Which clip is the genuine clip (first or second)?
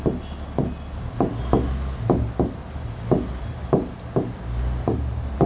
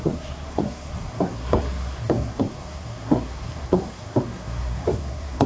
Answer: first